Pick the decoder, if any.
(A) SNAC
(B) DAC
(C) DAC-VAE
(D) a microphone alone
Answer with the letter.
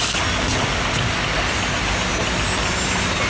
D